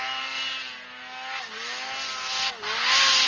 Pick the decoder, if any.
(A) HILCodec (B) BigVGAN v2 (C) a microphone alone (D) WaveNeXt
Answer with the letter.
C